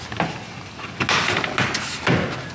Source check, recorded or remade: recorded